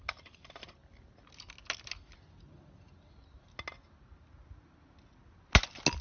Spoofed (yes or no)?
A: no